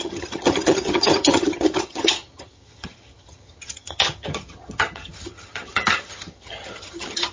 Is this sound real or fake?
fake